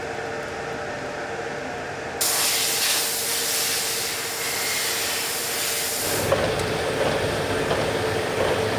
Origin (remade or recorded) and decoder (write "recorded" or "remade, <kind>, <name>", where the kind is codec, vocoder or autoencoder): recorded